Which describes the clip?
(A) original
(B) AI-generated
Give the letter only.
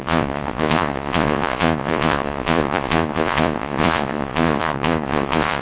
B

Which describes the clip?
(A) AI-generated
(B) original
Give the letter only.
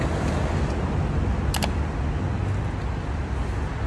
B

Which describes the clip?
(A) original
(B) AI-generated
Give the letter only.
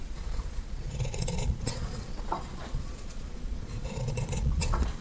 B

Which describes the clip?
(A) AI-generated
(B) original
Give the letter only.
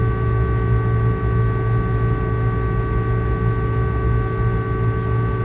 B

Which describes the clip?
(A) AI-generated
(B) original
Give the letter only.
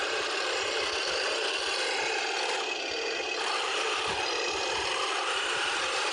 B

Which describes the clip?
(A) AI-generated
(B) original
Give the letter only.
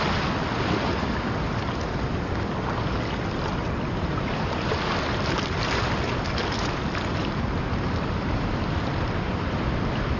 B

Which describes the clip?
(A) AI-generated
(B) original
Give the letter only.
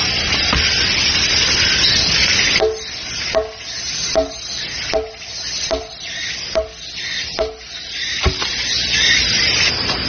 B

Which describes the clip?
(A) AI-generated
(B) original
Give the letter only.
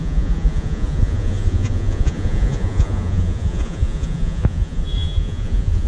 A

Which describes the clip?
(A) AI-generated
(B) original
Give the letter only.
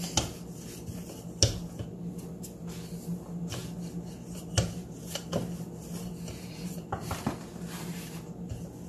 B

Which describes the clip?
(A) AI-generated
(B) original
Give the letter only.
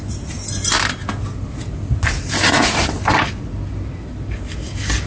B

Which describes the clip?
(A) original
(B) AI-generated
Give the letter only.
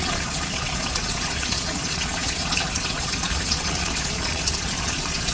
B